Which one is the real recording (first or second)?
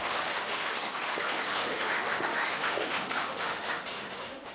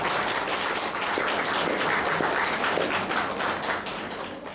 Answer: second